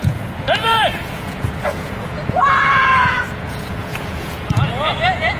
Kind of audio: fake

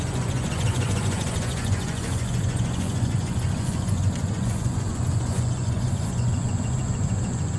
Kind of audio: fake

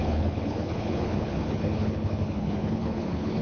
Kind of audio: fake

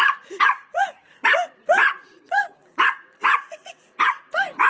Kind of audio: fake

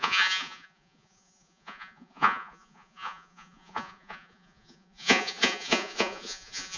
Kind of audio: fake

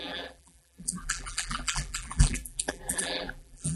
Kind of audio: fake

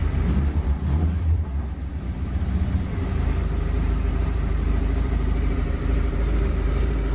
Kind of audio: fake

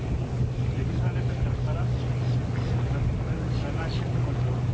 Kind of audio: real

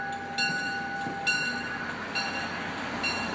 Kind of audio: real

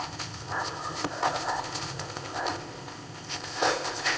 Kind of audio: fake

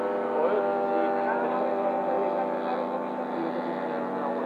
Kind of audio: real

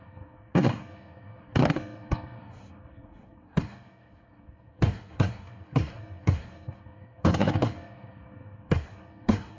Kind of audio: fake